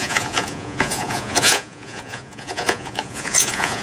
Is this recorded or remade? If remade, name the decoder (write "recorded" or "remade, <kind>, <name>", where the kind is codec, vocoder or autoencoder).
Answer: remade, vocoder, Vocos